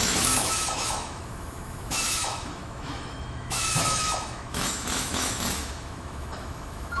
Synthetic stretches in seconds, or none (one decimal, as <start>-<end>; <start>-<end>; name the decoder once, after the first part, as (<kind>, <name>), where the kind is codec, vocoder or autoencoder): 0.0-7.0 (autoencoder, DAC-VAE)

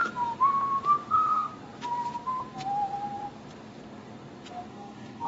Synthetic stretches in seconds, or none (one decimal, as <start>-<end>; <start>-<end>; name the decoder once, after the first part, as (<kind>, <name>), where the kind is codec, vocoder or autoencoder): 1.1-1.5 (codec, DAC); 4.7-5.3

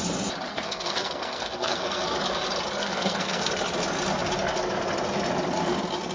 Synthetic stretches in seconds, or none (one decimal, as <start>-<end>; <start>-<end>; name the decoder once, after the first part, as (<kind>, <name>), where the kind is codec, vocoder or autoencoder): 0.5-2.2 (codec, SNAC); 2.8-3.5